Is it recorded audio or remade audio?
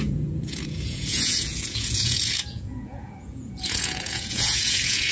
remade